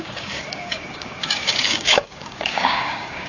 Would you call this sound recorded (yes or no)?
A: no